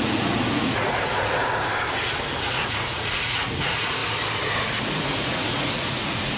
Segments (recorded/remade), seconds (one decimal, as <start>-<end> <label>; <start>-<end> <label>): 0.0-1.7 remade; 1.7-2.4 recorded; 2.4-4.0 remade; 4.0-4.8 recorded; 4.8-6.4 remade